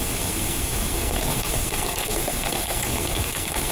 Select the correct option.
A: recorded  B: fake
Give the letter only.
B